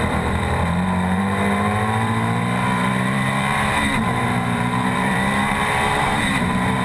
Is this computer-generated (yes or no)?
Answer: yes